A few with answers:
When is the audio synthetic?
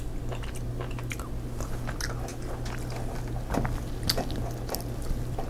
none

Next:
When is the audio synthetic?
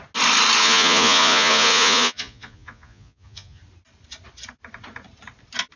0.6-3.6 (vocoder, Vocos)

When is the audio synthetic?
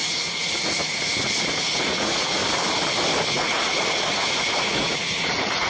0.0-2.4 (vocoder, Vocos); 3.3-5.7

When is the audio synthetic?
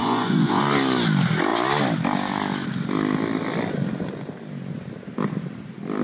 0.0-0.6 (vocoder, Vocos)